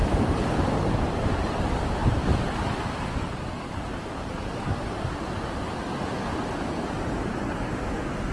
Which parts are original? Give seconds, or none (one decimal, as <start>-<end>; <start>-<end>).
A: 1.6-8.3